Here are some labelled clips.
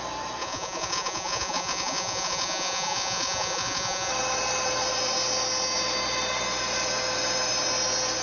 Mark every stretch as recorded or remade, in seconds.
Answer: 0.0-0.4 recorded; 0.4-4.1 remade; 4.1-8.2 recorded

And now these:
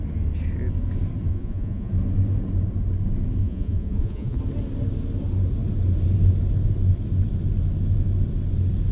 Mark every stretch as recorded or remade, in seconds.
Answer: 0.0-1.3 recorded; 1.3-1.9 remade; 1.9-3.4 recorded; 3.4-4.4 remade; 4.4-8.9 recorded

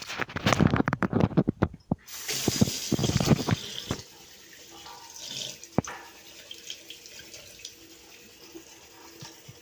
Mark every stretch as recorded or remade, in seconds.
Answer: 0.0-9.6 recorded

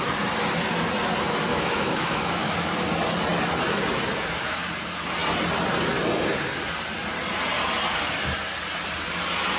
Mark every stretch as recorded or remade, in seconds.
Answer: 0.0-1.5 recorded; 1.5-2.8 remade; 2.8-9.6 recorded

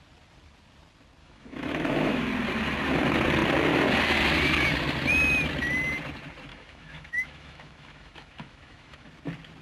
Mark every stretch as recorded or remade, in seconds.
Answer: 0.0-1.2 recorded; 1.2-2.2 remade; 2.2-6.5 recorded; 6.5-9.1 remade; 9.1-9.6 recorded

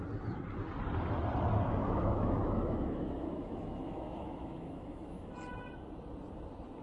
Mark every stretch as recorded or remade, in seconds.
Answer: 0.0-1.8 recorded; 1.8-5.3 remade; 5.3-6.8 recorded